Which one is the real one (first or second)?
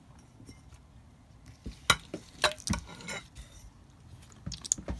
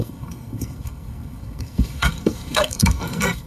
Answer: first